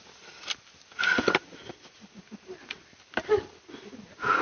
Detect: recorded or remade recorded